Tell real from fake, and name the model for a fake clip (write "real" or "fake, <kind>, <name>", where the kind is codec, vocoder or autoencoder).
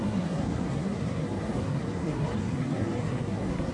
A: fake, codec, SNAC